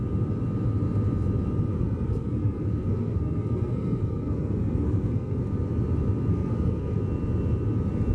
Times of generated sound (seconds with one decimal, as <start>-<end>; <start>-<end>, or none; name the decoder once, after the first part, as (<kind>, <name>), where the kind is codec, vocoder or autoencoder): 1.7-5.4 (codec, SNAC); 6.3-7.0